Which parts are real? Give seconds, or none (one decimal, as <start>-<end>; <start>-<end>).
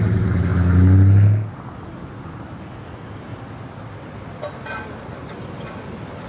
0.0-6.3